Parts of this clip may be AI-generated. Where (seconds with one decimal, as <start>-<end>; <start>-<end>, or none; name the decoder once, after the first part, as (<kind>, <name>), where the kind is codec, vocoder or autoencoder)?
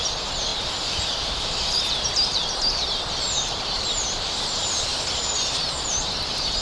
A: 0.0-4.9 (vocoder, BigVGAN v2); 5.8-6.6